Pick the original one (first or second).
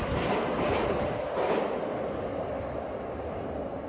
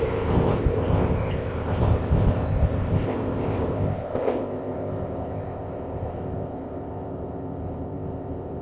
first